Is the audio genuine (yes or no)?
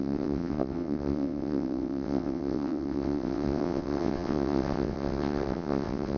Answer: no